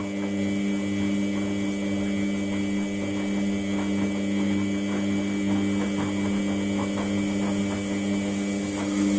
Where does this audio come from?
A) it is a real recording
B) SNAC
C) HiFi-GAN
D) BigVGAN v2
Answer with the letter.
A